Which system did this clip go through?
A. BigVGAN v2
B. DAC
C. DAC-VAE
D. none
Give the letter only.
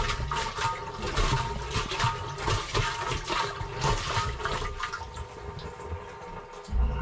D